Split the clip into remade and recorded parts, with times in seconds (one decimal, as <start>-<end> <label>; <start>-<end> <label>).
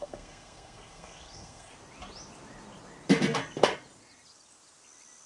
0.0-1.7 remade; 1.7-5.3 recorded